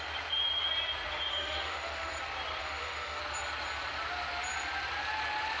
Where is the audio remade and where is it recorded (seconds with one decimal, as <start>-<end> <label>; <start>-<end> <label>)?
0.0-1.3 recorded; 1.3-2.1 remade; 2.1-2.6 recorded; 2.6-3.2 remade; 3.2-5.6 recorded